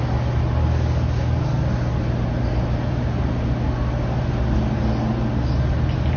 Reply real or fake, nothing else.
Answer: real